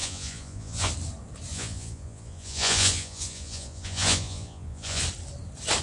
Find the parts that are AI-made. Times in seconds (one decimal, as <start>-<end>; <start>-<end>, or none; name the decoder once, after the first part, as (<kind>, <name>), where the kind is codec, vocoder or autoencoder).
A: 0.0-0.9 (vocoder, Vocos); 1.5-5.0